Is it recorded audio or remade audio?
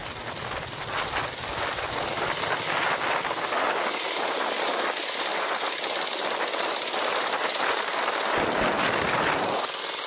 recorded